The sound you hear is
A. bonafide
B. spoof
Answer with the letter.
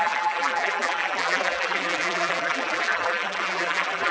B